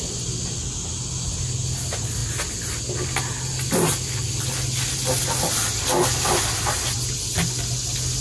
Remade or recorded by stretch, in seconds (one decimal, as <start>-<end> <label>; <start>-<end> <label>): 0.0-8.2 recorded